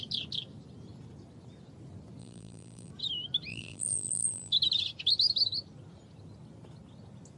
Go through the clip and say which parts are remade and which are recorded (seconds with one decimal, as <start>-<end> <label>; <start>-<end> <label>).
0.0-2.2 recorded; 2.2-2.9 remade; 2.9-3.5 recorded; 3.5-4.5 remade; 4.5-7.4 recorded